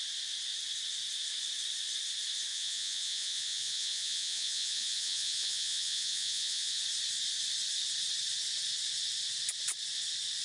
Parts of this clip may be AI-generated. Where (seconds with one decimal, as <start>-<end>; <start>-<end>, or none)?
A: 2.5-6.8

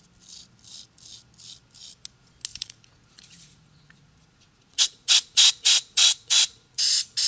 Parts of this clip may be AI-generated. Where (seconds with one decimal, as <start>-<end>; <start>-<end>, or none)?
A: 2.5-6.8

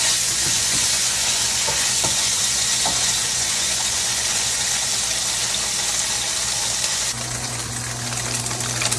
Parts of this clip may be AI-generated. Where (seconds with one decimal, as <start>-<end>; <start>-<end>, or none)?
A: 0.0-4.9; 6.9-7.6

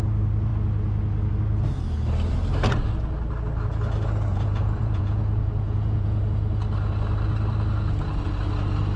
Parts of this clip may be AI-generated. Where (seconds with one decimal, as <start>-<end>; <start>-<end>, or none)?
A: 4.3-6.2

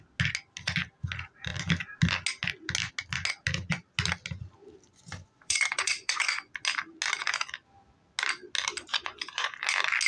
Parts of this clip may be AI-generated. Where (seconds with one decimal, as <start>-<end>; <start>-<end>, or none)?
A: 4.9-6.5; 8.9-9.6

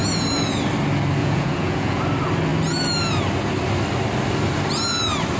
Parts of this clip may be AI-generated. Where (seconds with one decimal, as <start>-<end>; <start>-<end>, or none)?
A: 1.2-2.0

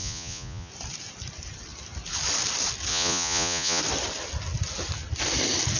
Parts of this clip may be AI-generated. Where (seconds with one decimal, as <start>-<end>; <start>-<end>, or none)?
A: 0.0-0.7; 2.9-3.8

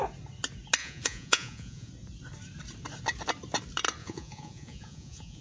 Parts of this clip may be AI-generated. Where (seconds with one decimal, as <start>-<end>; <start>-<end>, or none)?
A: 0.8-1.9; 4.0-5.4